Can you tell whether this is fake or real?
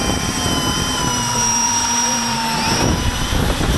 fake